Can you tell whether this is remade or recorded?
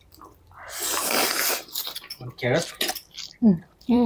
remade